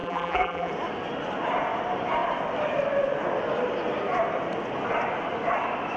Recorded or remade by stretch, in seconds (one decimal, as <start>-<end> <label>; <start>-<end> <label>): 0.0-0.7 remade; 0.7-6.0 recorded